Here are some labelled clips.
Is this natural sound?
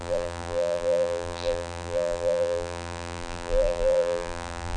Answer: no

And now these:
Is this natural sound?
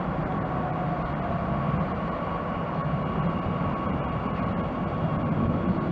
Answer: yes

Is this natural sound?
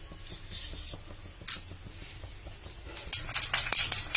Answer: yes